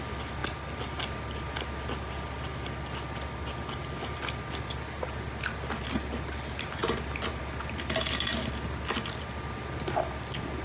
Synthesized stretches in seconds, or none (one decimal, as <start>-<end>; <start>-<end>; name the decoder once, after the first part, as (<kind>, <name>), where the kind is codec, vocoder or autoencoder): none